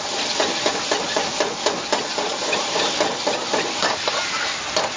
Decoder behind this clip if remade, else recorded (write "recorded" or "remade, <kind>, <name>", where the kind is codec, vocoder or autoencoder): recorded